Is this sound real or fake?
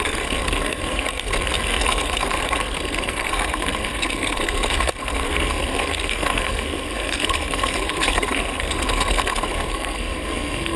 fake